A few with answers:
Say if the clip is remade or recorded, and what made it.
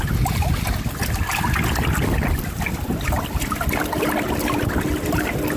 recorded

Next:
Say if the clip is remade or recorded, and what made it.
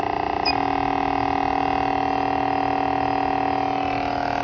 recorded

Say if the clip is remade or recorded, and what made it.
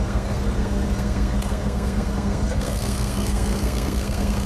remade, codec, SNAC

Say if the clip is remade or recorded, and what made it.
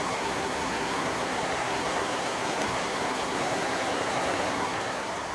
remade, codec, SNAC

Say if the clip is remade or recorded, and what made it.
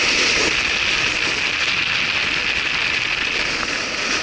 recorded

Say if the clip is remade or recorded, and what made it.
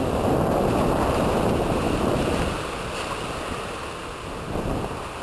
recorded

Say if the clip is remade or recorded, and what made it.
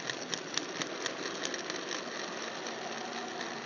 recorded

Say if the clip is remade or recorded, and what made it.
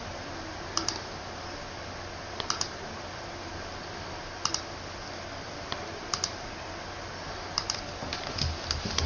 recorded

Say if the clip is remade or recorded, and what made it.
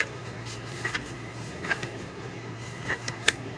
remade, codec, SNAC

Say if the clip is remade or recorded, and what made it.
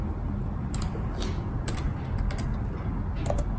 recorded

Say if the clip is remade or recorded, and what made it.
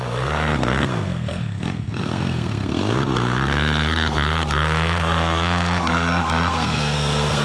remade, codec, SNAC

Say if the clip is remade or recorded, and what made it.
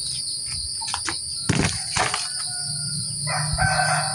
recorded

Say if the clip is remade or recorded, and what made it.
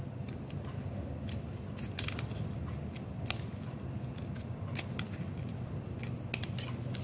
recorded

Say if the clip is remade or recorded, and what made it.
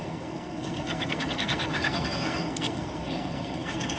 remade, codec, SNAC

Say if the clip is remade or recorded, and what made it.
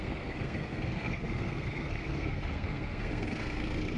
remade, codec, SNAC